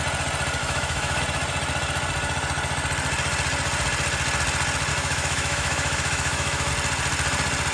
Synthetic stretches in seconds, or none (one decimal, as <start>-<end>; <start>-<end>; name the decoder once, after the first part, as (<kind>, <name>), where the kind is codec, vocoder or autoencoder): 0.6-1.2 (autoencoder, DAC-VAE); 4.9-6.7